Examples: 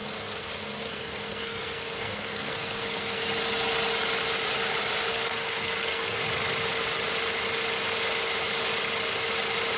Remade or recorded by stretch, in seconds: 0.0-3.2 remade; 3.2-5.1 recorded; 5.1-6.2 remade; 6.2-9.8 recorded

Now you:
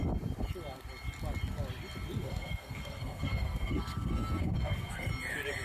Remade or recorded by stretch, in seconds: 0.0-2.2 recorded; 2.2-5.1 remade; 5.1-5.6 recorded